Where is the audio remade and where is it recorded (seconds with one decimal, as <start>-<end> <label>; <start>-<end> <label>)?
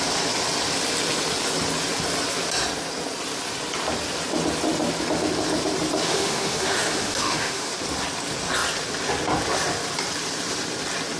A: 0.0-6.1 recorded; 6.1-7.7 remade; 7.7-11.2 recorded